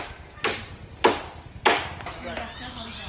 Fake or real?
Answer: real